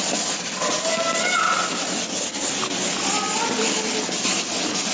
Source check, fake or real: real